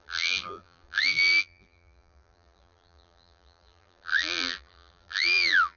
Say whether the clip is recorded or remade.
remade